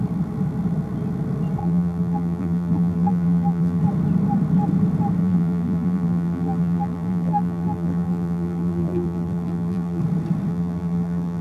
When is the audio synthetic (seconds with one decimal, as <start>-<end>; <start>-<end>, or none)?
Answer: 1.6-3.8; 5.2-10.0; 10.5-11.4